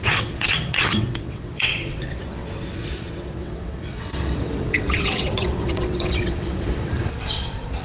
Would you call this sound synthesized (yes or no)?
yes